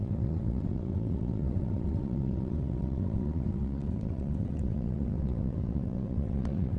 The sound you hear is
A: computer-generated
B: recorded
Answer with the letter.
A